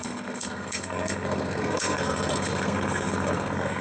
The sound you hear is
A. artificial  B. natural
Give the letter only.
A